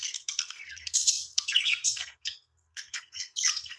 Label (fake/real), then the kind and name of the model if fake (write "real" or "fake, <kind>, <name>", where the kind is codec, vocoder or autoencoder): fake, codec, SNAC